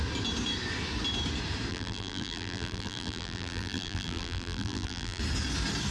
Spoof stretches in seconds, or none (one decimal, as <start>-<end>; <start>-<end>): 1.7-5.2